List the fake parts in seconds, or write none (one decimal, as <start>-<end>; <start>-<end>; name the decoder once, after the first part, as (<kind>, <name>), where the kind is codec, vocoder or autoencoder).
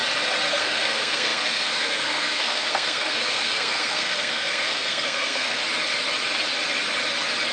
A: 0.6-5.6 (codec, SNAC)